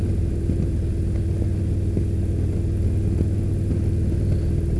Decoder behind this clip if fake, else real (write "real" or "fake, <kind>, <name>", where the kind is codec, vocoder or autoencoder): real